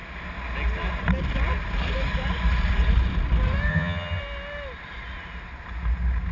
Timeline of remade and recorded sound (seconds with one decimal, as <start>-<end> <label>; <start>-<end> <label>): 0.0-3.7 recorded; 3.7-4.2 remade; 4.2-6.3 recorded